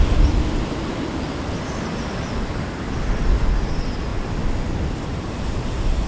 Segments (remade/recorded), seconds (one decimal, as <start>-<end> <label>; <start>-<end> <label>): 0.0-6.1 recorded

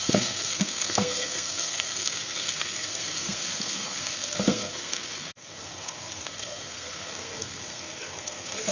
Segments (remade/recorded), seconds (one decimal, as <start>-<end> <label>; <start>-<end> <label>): 0.0-8.7 remade